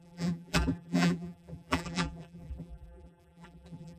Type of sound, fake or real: fake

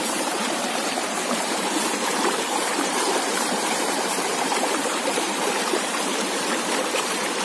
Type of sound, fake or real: fake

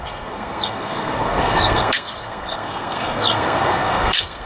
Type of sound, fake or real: fake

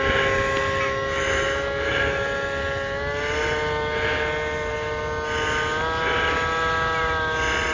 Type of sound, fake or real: real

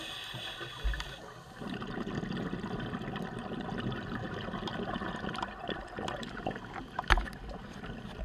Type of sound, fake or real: real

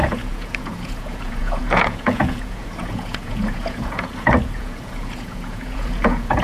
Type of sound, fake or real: fake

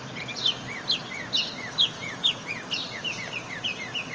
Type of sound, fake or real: real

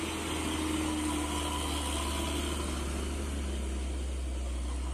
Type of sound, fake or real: real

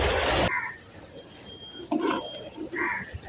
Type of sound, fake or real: real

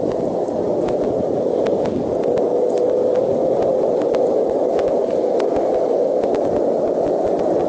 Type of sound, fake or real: real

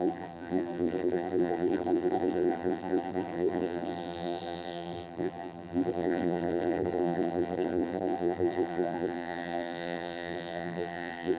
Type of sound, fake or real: fake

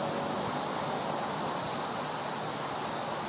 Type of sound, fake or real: real